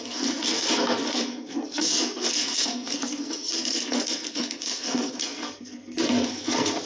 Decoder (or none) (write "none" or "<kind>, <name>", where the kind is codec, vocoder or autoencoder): codec, SNAC